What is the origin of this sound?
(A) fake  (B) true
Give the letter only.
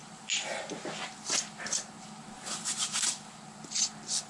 B